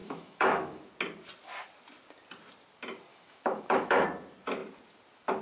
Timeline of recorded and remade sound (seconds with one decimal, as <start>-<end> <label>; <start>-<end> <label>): 0.0-0.9 remade; 0.9-3.1 recorded; 3.1-4.0 remade; 4.0-5.4 recorded